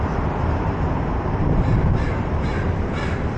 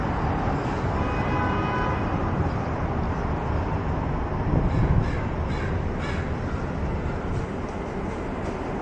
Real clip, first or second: second